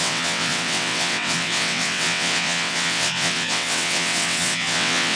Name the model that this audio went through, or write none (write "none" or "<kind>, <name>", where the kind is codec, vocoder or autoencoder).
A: vocoder, WaveNeXt